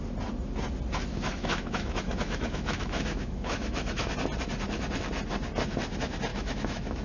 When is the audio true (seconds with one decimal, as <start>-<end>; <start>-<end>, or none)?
0.0-1.1; 4.1-6.3